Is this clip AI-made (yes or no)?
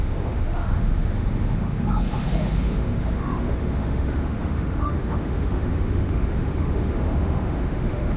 yes